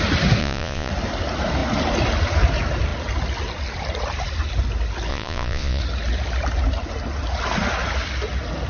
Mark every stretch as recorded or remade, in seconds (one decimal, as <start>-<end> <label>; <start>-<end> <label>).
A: 0.0-0.4 recorded; 0.4-0.9 remade; 0.9-5.1 recorded; 5.1-5.8 remade; 5.8-8.7 recorded